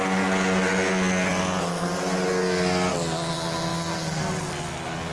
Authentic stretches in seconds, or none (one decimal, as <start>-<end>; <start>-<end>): 0.0-5.1